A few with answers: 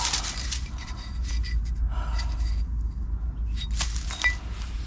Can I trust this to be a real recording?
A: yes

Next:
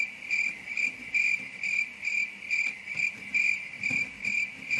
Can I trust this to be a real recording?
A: yes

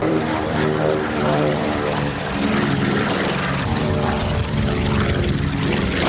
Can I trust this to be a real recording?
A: no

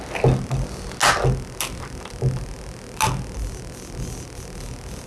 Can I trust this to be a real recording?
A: yes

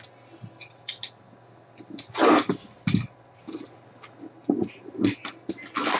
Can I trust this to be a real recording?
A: yes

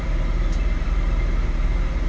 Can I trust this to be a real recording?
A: no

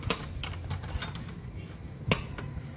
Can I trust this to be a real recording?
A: yes